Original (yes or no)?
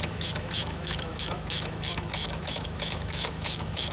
no